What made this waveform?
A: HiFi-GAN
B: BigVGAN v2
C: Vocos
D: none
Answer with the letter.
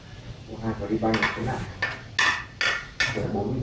D